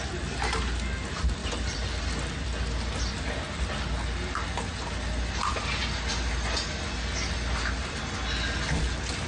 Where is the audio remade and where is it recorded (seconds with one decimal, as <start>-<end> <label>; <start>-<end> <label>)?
0.0-1.4 recorded; 1.4-2.0 remade; 2.0-9.3 recorded